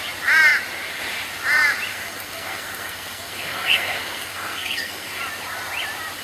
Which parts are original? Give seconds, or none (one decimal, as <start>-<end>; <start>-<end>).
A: 0.0-1.9; 5.2-6.2